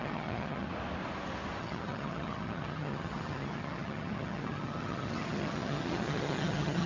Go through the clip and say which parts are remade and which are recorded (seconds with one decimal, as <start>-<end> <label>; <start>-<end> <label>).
0.0-0.7 remade; 0.7-1.6 recorded; 1.6-6.9 remade